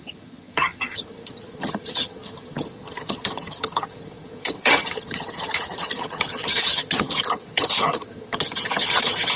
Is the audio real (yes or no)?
no